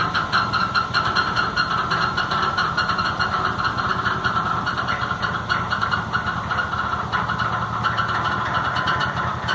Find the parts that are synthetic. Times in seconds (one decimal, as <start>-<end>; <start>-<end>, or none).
none